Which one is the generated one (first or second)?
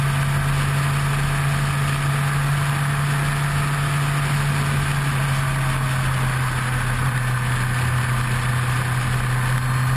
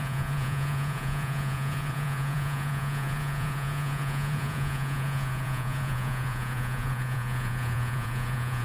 second